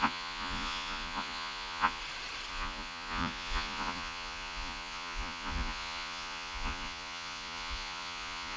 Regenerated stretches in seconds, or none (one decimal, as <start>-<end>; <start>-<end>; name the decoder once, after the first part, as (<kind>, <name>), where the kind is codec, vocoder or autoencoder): 0.0-2.0 (vocoder, Vocos); 2.5-8.6